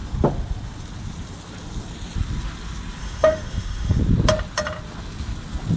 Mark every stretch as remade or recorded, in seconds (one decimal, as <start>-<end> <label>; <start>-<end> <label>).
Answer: 0.0-3.0 recorded; 3.0-4.0 remade; 4.0-5.8 recorded